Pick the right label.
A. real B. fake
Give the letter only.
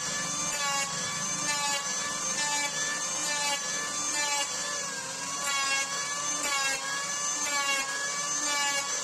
A